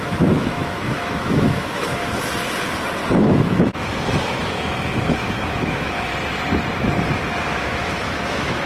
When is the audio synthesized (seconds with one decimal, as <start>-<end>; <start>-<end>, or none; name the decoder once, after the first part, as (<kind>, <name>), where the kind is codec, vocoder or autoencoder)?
0.0-2.0 (autoencoder, DAC-VAE); 3.2-6.1; 7.2-8.7